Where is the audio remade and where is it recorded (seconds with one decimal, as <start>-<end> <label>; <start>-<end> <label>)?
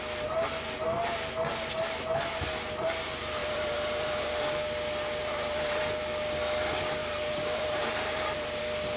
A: 0.0-3.4 recorded; 3.4-4.4 remade; 4.4-5.2 recorded; 5.2-5.8 remade; 5.8-7.0 recorded; 7.0-8.6 remade; 8.6-9.0 recorded